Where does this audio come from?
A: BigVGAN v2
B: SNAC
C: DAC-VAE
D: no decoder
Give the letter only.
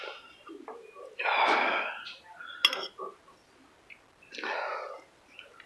D